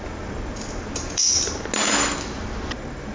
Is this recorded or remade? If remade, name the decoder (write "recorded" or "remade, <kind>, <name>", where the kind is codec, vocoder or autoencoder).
recorded